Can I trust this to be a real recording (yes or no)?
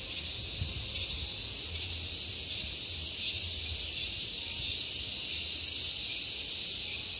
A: yes